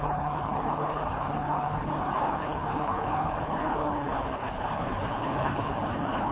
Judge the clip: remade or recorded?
remade